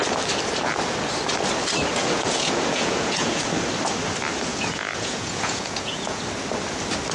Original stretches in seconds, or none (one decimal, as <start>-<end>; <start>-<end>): 0.0-2.0; 3.4-4.5; 6.2-7.1